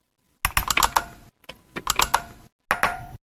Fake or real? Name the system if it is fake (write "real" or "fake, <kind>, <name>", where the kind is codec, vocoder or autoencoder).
real